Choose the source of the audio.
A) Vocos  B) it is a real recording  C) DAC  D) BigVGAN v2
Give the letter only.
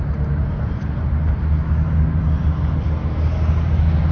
B